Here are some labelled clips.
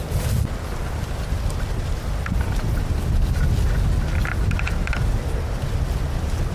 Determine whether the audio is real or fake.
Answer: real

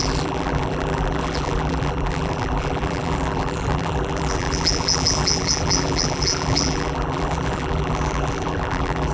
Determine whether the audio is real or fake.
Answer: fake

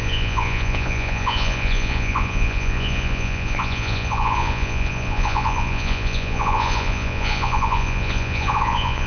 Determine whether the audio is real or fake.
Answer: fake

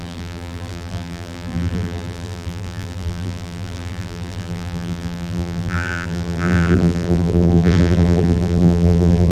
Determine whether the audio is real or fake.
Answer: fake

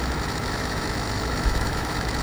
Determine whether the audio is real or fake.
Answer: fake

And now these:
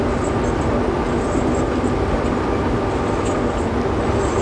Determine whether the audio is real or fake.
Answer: real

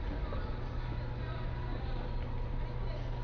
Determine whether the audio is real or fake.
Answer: real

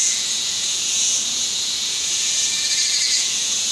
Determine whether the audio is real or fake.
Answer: fake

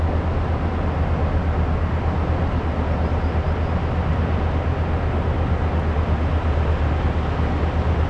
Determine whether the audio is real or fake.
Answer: real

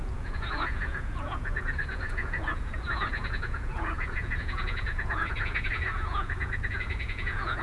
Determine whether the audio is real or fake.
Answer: fake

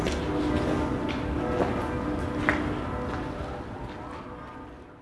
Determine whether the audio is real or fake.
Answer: real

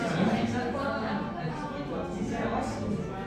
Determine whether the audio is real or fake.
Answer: real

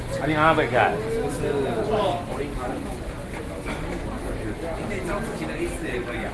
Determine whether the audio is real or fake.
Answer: real